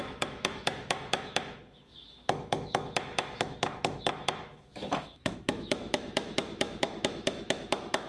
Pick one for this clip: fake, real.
fake